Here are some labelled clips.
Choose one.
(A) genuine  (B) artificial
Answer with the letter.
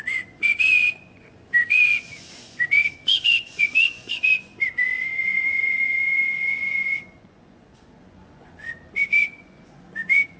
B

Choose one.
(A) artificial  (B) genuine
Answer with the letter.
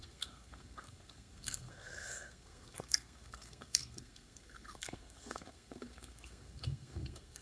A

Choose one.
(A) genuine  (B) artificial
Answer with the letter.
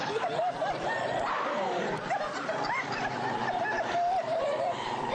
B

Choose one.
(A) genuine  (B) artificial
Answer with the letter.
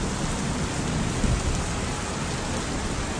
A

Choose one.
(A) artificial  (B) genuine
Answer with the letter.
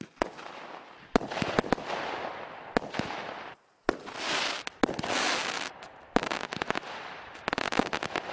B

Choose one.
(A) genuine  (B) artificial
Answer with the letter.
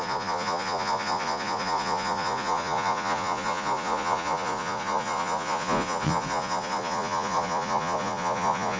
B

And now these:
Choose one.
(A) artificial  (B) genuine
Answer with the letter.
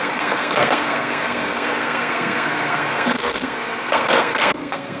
A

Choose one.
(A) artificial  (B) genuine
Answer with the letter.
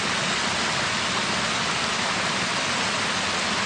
B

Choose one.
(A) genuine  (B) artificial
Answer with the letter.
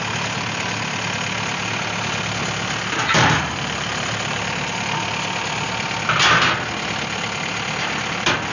A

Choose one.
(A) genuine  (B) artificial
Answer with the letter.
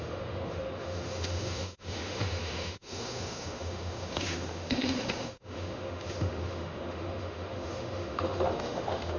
B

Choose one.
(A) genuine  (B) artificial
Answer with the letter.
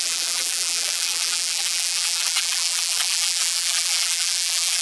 B